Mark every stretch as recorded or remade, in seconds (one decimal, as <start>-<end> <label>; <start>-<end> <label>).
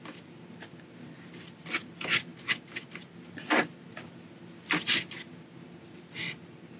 0.0-6.8 recorded